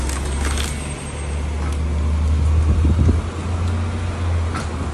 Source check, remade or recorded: recorded